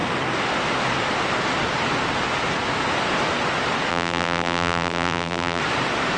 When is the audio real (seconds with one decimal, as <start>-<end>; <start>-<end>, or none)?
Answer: 0.0-3.9; 5.6-6.2